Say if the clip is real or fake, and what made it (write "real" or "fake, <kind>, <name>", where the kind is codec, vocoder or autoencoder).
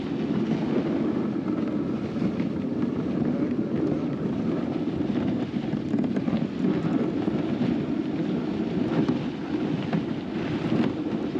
real